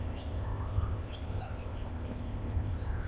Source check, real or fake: fake